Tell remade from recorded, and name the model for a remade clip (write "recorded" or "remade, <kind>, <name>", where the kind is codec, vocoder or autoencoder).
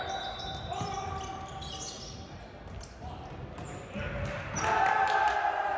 recorded